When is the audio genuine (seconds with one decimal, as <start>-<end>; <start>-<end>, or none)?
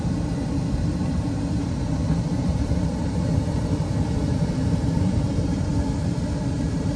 5.7-6.4